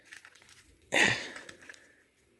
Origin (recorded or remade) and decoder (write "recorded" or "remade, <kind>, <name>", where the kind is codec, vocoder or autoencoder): remade, vocoder, Vocos